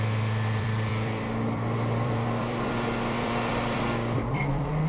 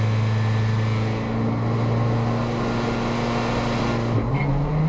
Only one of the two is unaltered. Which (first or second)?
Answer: second